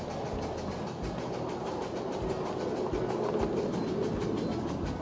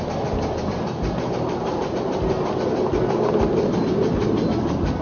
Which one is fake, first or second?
second